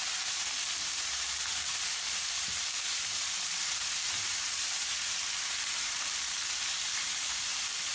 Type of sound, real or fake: fake